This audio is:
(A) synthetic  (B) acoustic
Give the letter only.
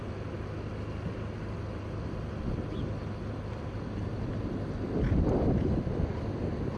B